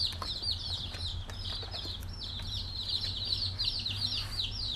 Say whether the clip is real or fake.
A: real